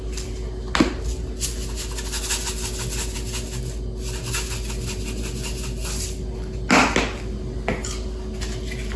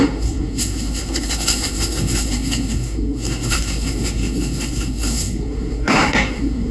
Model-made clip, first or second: second